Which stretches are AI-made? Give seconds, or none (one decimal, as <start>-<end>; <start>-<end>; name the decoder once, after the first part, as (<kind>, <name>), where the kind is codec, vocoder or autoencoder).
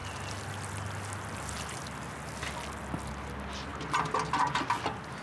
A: none